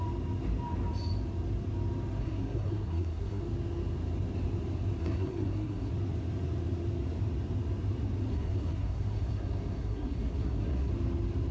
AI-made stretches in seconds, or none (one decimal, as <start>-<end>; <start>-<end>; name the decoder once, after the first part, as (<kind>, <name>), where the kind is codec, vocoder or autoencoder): 2.2-3.4 (codec, SNAC); 5.0-5.9; 8.3-10.9